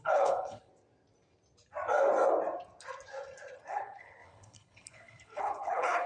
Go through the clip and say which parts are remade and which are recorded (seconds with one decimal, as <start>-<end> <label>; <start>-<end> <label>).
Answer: 0.0-0.7 remade; 0.7-3.7 recorded; 3.7-6.1 remade